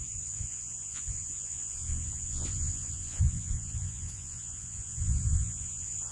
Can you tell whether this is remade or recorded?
remade